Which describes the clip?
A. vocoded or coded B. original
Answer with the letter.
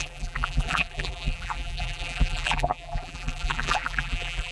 A